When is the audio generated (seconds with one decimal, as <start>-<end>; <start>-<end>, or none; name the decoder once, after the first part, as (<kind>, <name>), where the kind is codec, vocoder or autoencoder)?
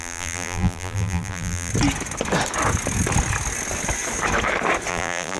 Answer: 0.0-1.7 (vocoder, BigVGAN v2); 4.9-5.4